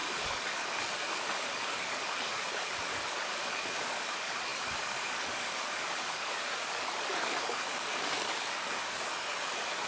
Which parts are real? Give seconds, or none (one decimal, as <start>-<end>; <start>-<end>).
none